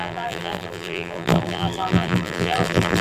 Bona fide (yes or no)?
no